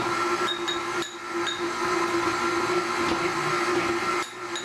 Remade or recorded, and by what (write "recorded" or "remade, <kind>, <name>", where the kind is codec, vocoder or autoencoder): recorded